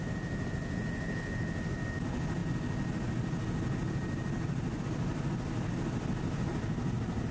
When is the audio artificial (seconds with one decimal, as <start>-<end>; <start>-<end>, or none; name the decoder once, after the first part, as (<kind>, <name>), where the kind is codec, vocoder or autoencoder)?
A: none